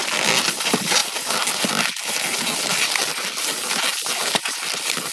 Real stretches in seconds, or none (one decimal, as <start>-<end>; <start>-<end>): 0.0-5.1